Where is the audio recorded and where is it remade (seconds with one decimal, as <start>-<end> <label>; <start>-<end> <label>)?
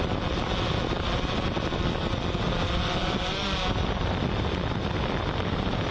0.0-5.9 recorded